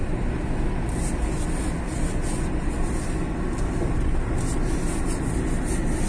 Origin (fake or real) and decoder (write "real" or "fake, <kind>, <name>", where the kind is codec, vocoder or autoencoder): real